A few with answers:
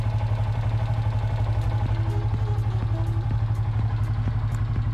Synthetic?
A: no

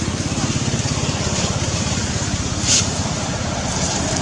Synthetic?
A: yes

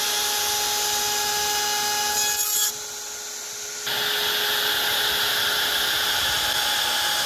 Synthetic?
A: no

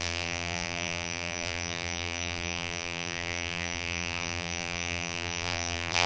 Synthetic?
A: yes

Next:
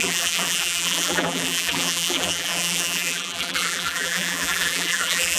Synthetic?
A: yes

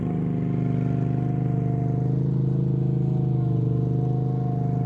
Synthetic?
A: no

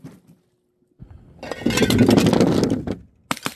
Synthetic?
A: no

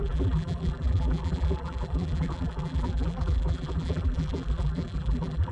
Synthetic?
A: yes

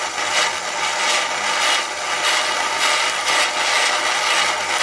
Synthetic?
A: no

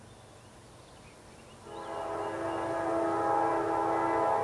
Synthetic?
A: no